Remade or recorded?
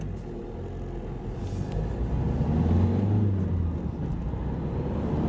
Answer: recorded